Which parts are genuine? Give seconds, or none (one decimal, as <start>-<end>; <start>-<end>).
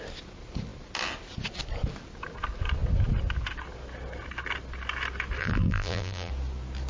0.0-5.4; 6.3-6.9